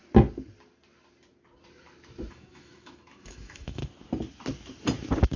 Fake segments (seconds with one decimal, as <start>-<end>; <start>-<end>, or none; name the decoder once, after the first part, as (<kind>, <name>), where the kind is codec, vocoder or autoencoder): 2.3-3.8 (autoencoder, DAC-VAE)